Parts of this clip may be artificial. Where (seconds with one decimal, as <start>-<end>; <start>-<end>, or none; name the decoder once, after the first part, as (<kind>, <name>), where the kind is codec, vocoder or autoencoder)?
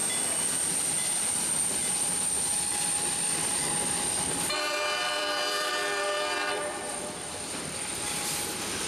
1.5-3.5 (vocoder, BigVGAN v2); 4.3-8.9